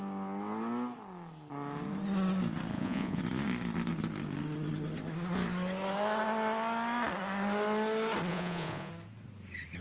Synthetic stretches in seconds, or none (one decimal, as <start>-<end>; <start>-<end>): 2.7-3.2; 8.3-8.9